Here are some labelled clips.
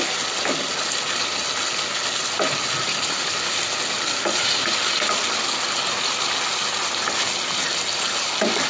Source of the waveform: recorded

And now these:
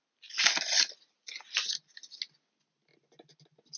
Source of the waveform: recorded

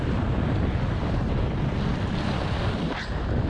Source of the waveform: recorded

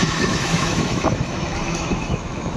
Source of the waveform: remade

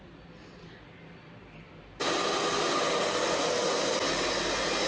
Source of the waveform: recorded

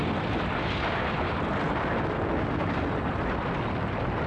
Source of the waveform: recorded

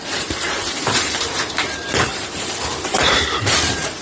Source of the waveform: remade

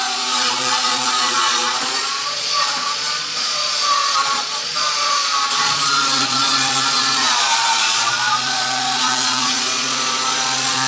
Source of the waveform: remade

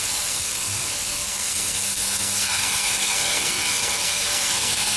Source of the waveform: remade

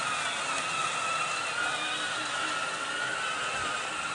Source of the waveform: recorded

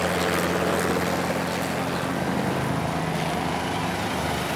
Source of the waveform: recorded